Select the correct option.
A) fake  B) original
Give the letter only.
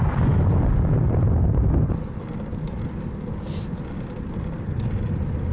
B